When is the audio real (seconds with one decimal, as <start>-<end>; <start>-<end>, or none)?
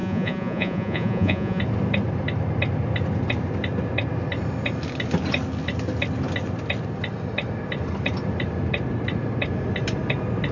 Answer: 1.6-10.5